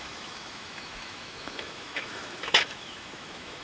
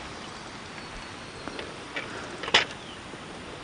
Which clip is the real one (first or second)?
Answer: second